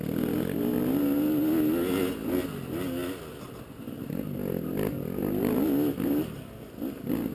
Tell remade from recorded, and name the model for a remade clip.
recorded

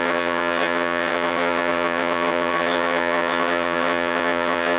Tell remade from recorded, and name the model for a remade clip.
remade, vocoder, HiFi-GAN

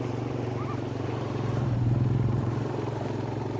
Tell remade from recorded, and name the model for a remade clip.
remade, vocoder, BigVGAN v2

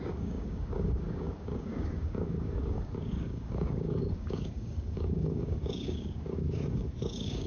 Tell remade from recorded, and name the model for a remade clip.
remade, codec, DAC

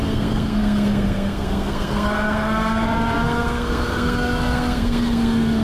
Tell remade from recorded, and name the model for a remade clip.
remade, codec, SNAC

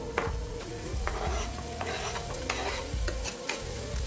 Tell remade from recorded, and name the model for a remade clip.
remade, vocoder, Vocos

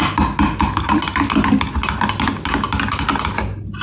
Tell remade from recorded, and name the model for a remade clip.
recorded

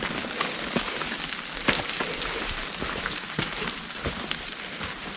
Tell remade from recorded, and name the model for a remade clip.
recorded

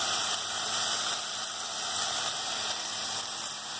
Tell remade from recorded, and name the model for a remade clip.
recorded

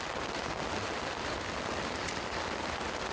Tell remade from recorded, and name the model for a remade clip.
recorded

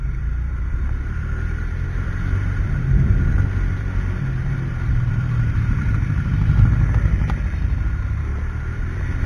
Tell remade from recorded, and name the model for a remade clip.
remade, vocoder, BigVGAN v2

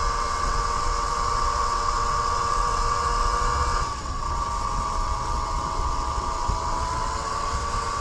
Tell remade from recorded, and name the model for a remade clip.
remade, vocoder, WaveNeXt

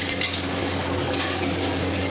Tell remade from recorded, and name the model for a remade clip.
remade, codec, DAC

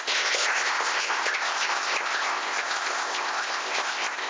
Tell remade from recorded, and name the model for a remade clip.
remade, codec, ZipCodec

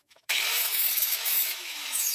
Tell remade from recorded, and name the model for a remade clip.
remade, autoencoder, DAC-VAE